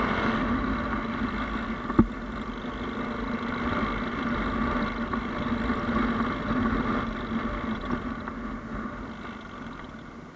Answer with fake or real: real